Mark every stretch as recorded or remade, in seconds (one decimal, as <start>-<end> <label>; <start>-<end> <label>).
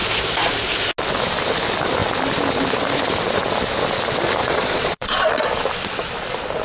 0.0-4.4 recorded; 4.4-5.3 remade; 5.3-6.6 recorded